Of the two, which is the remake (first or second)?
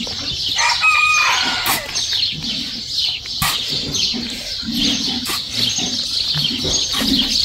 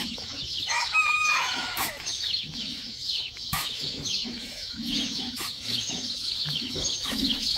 second